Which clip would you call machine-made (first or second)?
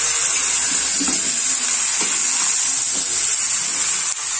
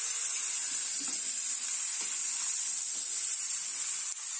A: second